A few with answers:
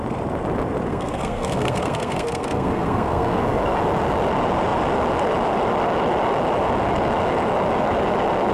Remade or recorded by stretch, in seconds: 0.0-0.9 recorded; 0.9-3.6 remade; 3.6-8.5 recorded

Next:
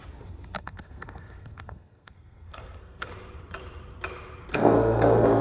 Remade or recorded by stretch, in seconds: 0.0-0.6 recorded; 0.6-3.1 remade; 3.1-4.5 recorded; 4.5-5.4 remade

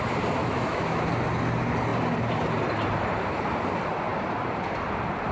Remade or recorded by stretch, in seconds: 0.0-0.4 recorded; 0.4-1.1 remade; 1.1-5.3 recorded

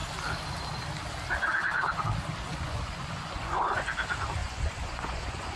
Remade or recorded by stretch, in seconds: 0.0-2.5 recorded; 2.5-3.8 remade; 3.8-4.4 recorded; 4.4-5.6 remade

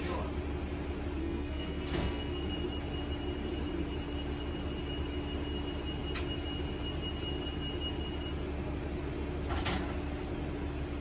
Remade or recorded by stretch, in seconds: 0.0-1.2 recorded; 1.2-2.5 remade; 2.5-11.0 recorded